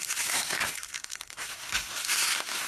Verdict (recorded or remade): remade